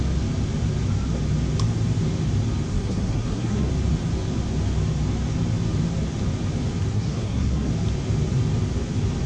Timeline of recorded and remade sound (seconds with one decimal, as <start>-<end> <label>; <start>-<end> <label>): 0.0-2.7 recorded; 2.7-3.7 remade; 3.7-6.9 recorded; 6.9-7.7 remade; 7.7-9.3 recorded